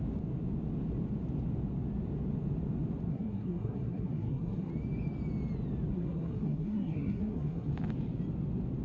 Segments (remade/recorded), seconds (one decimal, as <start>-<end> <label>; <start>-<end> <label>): 0.0-3.1 recorded; 3.1-4.7 remade; 4.7-5.9 recorded; 5.9-7.7 remade; 7.7-8.8 recorded